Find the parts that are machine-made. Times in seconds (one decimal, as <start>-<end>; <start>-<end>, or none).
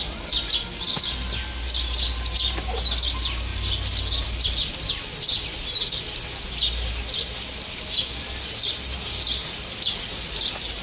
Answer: none